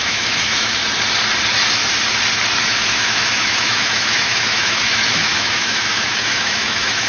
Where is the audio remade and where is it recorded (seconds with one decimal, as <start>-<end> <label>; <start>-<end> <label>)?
0.0-0.8 remade; 0.8-2.6 recorded; 2.6-7.1 remade